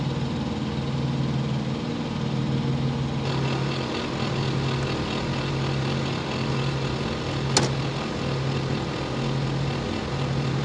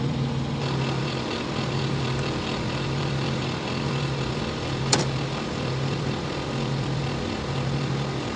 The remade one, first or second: second